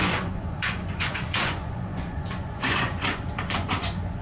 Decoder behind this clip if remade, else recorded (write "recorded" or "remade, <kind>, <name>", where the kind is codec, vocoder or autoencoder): remade, vocoder, Vocos